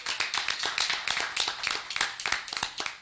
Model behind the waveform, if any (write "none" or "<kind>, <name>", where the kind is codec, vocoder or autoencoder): none